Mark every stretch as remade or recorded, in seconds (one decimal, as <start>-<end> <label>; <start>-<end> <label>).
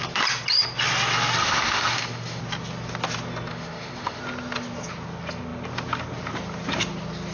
0.0-1.4 recorded; 1.4-2.4 remade; 2.4-3.5 recorded; 3.5-4.2 remade; 4.2-7.3 recorded